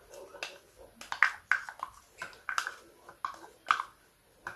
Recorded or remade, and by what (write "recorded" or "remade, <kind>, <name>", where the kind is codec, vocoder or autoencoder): recorded